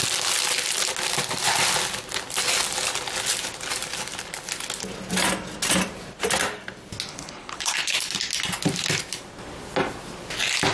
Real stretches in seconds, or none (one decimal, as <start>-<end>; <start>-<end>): 0.0-7.1; 8.1-10.7